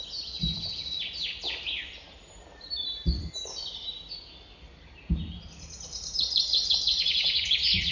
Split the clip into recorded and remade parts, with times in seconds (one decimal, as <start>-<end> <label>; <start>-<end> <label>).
0.0-5.9 recorded; 5.9-7.9 remade